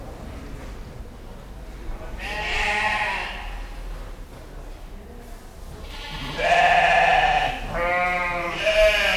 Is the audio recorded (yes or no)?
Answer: yes